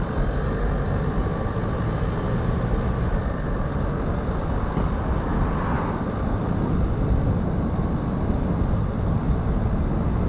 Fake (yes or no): no